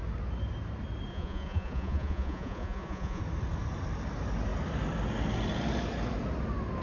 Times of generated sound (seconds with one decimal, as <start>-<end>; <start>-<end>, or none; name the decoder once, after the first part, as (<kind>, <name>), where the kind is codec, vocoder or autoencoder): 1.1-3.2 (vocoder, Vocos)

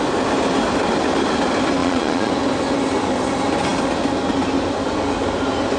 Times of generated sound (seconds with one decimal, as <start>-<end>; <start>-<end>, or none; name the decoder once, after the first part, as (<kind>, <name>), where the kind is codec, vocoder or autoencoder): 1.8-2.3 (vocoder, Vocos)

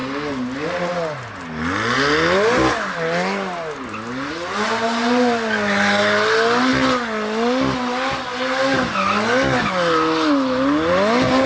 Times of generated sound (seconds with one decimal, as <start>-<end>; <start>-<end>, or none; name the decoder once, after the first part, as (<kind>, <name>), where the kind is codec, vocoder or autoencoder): none

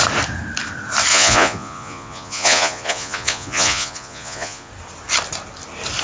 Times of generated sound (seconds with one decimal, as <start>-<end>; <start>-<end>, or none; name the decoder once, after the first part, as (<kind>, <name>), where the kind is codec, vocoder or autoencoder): 1.1-4.7 (vocoder, Vocos)

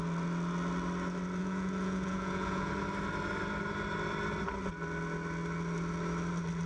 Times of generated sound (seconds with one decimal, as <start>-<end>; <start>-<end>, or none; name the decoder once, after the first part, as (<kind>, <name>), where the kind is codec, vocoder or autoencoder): 1.4-2.7 (vocoder, Vocos)

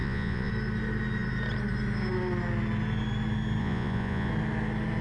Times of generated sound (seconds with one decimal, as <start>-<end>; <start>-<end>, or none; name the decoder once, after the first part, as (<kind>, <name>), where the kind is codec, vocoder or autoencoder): 0.0-0.5 (vocoder, Vocos); 3.6-4.3

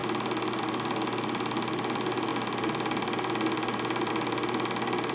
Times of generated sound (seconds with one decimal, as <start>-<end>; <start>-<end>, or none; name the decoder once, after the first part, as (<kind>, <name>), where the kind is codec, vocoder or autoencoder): none